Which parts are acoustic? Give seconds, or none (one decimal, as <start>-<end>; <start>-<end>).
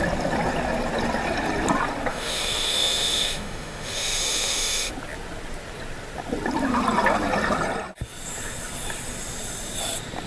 0.0-2.1; 4.9-10.3